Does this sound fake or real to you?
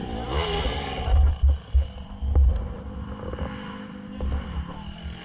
real